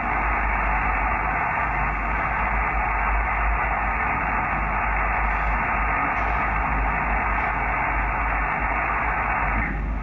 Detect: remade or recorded recorded